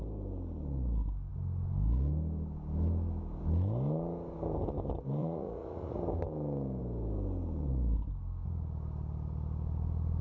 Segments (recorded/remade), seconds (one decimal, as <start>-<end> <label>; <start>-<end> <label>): 0.0-5.2 recorded; 5.2-6.0 remade; 6.0-10.2 recorded